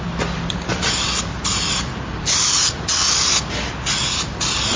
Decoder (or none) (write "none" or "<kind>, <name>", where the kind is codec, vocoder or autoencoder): none